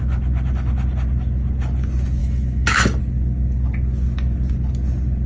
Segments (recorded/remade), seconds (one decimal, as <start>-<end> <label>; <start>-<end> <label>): 0.0-2.2 recorded; 2.2-3.0 remade; 3.0-5.3 recorded